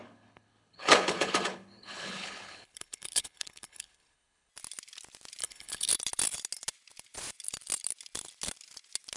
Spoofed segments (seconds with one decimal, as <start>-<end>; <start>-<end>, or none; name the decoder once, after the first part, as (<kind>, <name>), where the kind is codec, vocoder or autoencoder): 0.0-4.5 (codec, HILCodec); 5.4-5.9